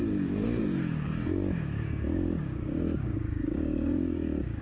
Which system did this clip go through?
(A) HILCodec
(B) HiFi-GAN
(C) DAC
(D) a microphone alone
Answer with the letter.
C